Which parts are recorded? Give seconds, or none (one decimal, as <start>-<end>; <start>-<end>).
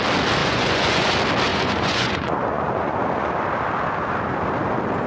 0.0-0.4; 1.1-1.5; 3.3-5.1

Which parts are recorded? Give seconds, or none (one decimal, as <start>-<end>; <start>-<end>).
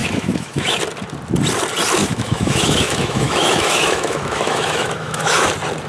0.8-2.0; 5.5-5.9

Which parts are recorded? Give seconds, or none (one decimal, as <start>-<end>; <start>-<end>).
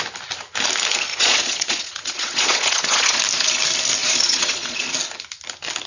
0.0-1.1; 3.2-4.0; 4.9-5.9